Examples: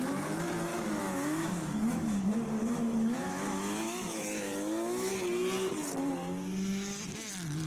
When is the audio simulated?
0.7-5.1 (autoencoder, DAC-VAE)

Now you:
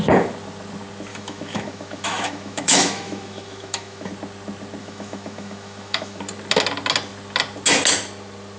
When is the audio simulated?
1.1-4.1 (autoencoder, DAC-VAE); 4.8-6.2

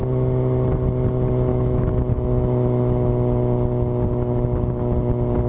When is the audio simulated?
1.5-3.1 (autoencoder, DAC-VAE)

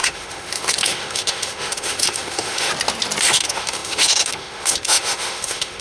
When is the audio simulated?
0.0-2.7 (autoencoder, DAC-VAE); 3.2-5.8

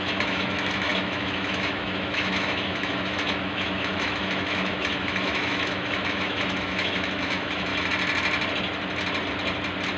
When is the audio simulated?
0.0-7.7 (autoencoder, DAC-VAE)